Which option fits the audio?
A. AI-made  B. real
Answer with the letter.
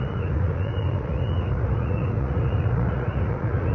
A